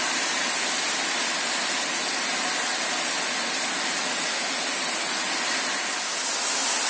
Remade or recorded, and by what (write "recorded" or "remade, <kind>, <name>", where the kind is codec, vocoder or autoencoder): recorded